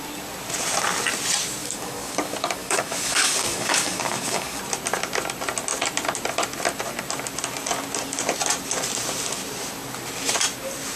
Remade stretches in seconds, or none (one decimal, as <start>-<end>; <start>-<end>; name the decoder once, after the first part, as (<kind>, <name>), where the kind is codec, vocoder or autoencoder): 1.6-4.6 (codec, DAC)